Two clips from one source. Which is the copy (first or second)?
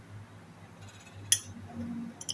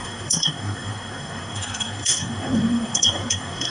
second